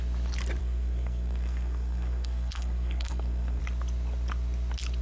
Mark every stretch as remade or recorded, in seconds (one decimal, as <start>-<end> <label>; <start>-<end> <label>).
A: 0.0-0.6 recorded; 0.6-3.6 remade; 3.6-5.0 recorded